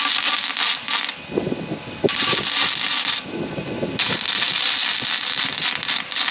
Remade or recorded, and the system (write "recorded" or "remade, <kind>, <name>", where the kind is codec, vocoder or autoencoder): recorded